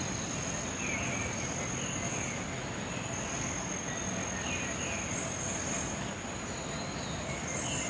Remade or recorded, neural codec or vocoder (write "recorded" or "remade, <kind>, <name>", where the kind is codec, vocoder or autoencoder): recorded